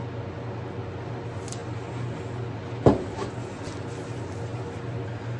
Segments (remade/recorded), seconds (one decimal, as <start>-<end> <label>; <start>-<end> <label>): 0.0-5.4 recorded